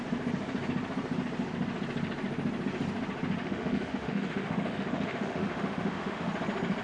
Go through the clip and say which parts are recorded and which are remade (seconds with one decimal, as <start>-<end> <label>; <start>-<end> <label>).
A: 0.0-3.4 recorded; 3.4-6.3 remade; 6.3-6.8 recorded